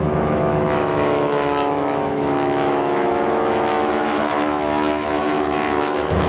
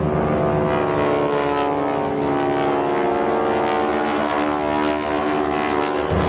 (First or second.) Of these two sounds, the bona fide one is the second